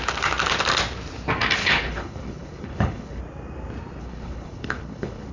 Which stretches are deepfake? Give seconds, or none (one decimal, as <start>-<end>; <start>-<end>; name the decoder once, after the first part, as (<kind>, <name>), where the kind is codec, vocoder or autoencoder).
1.6-3.2 (codec, HILCodec); 4.0-5.3